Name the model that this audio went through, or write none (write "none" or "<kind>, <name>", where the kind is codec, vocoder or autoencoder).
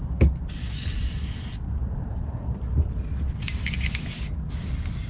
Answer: none